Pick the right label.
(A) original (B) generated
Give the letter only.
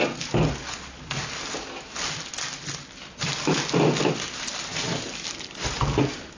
A